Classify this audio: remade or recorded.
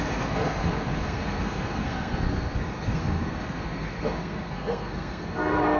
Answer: remade